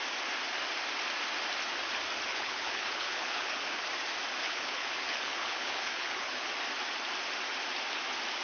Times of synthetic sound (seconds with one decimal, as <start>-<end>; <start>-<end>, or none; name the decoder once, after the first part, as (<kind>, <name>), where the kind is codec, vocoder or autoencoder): 2.3-3.8 (codec, HILCodec); 4.4-6.5